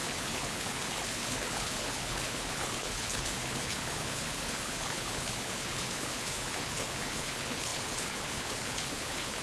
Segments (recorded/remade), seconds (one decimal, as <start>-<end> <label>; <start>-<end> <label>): 0.0-9.4 remade